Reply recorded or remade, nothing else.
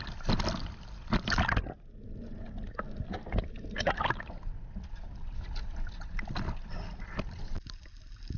recorded